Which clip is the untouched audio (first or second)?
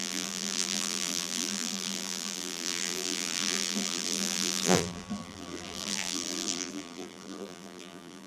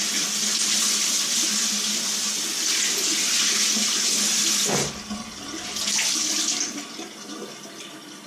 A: second